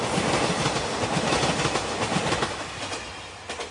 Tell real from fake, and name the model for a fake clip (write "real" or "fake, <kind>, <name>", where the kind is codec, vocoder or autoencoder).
real